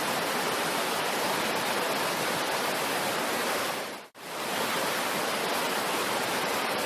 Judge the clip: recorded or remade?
recorded